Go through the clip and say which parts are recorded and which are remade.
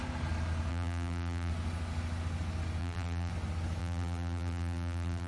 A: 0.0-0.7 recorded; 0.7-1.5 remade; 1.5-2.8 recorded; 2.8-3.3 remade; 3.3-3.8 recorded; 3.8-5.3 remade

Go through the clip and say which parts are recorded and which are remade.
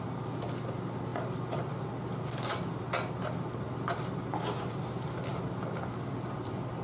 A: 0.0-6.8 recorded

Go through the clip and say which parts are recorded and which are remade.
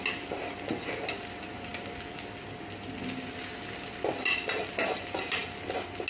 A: 0.0-6.1 recorded